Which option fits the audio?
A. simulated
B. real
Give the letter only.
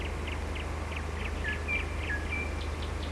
B